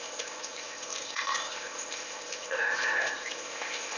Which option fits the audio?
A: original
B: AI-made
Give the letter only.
B